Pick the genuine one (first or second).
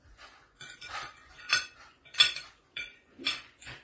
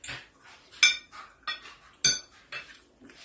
second